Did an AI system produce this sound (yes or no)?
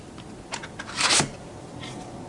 no